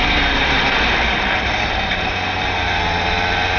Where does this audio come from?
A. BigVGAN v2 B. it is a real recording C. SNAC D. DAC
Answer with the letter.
B